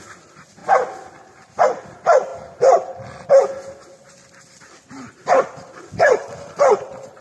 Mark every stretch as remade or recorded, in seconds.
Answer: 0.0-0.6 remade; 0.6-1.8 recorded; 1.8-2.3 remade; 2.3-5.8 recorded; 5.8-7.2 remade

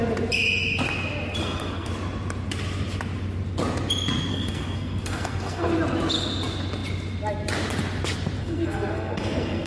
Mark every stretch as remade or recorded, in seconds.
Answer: 0.0-1.4 recorded; 1.4-1.9 remade; 1.9-4.3 recorded; 4.3-5.7 remade; 5.7-8.4 recorded; 8.4-9.7 remade

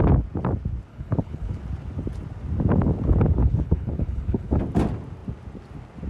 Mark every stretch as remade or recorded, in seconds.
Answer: 0.0-0.9 recorded; 0.9-1.6 remade; 1.6-3.4 recorded; 3.4-4.6 remade; 4.6-6.1 recorded

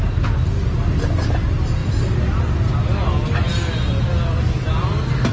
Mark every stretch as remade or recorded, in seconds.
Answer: 0.0-5.3 recorded

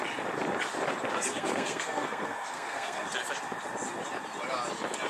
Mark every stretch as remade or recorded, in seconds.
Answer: 0.0-1.3 recorded; 1.3-3.1 remade; 3.1-5.1 recorded

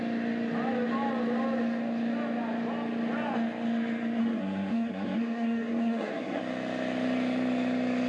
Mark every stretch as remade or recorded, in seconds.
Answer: 0.0-4.2 recorded; 4.2-6.4 remade; 6.4-8.1 recorded